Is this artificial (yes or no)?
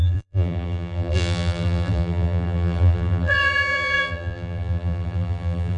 yes